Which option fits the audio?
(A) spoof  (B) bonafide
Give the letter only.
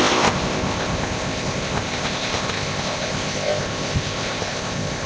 A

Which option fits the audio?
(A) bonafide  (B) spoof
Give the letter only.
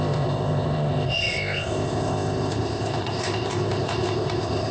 B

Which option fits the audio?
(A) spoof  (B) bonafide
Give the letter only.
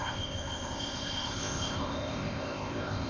A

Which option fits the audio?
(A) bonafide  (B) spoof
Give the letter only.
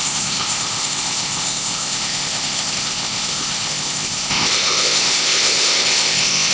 B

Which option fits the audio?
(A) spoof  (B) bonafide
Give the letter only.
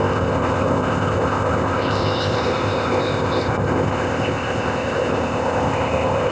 A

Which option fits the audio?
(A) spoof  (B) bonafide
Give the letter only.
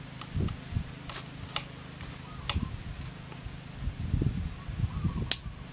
B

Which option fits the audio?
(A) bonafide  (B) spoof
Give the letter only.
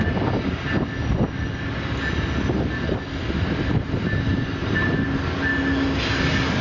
A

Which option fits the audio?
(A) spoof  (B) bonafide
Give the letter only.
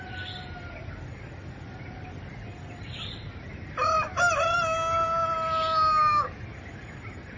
B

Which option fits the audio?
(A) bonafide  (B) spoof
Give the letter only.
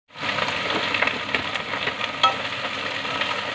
A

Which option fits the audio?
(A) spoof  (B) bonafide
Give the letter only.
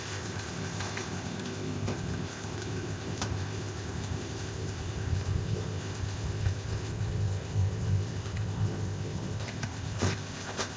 A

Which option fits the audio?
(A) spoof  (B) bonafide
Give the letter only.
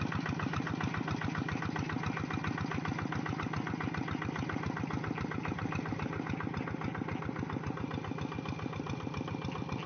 B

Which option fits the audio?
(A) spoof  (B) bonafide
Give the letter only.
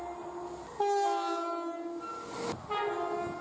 B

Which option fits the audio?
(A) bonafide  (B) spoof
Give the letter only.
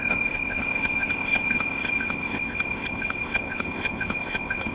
B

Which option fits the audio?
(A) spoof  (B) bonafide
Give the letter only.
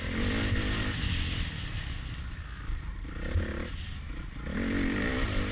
B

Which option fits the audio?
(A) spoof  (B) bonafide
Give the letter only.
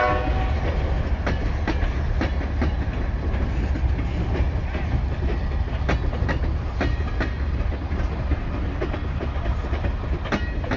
B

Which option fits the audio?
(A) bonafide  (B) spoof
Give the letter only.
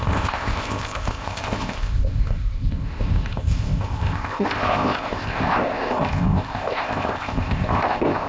B